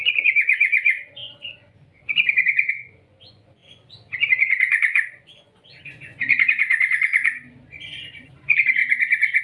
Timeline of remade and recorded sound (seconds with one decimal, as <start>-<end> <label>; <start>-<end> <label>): 0.0-9.4 remade